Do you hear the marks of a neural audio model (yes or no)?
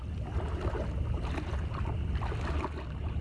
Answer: no